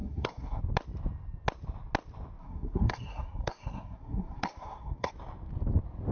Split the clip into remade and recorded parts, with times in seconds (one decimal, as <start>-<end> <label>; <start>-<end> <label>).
0.0-0.6 remade; 0.6-2.4 recorded; 2.4-5.1 remade; 5.1-6.1 recorded